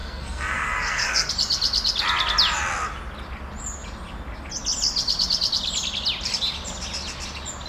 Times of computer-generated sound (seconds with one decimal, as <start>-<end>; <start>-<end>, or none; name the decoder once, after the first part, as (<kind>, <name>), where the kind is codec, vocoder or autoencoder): 0.0-1.3 (codec, SNAC)